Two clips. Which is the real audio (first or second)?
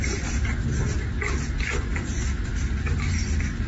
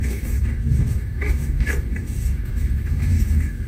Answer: first